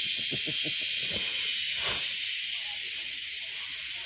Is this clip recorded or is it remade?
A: recorded